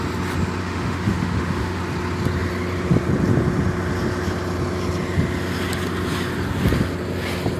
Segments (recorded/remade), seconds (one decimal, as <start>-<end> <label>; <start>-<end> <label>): 0.0-0.6 recorded; 0.6-1.8 remade; 1.8-7.6 recorded